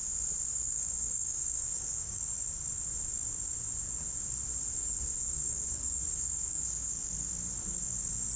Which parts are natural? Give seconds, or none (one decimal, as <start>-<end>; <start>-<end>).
0.0-0.5; 2.2-4.8; 7.1-8.4